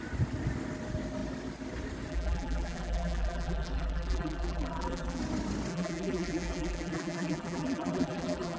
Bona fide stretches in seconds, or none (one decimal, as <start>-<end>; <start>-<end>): 0.0-2.1; 5.2-5.7